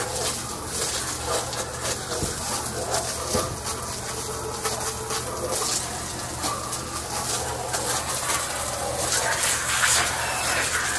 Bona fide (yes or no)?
yes